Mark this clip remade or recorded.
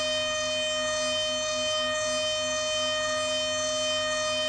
recorded